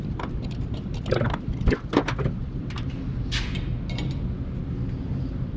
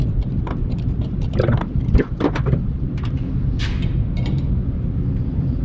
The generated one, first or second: second